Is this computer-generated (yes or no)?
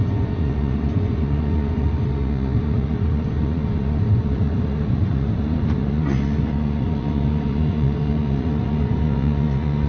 yes